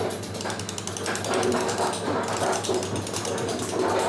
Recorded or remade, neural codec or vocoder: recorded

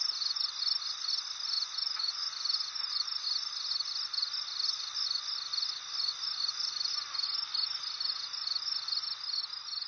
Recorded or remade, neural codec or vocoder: recorded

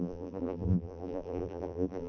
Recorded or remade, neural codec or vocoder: remade, vocoder, BigVGAN v2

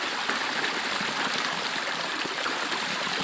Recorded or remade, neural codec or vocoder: recorded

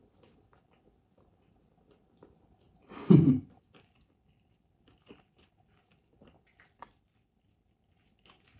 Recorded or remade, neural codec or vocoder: recorded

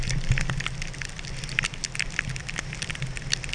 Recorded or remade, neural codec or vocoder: recorded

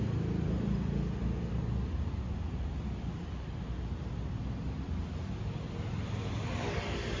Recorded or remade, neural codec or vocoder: recorded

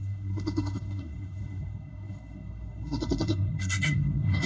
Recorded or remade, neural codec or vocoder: remade, codec, SNAC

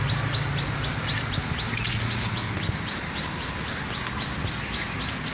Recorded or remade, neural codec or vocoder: recorded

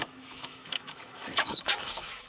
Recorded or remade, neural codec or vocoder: remade, autoencoder, DAC-VAE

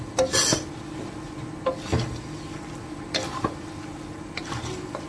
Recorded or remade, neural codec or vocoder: recorded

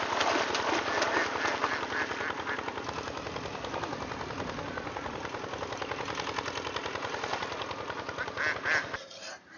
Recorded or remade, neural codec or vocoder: recorded